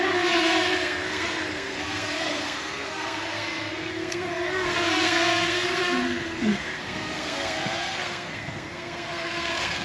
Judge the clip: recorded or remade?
remade